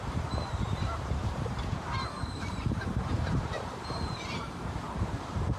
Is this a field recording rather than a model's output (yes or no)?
no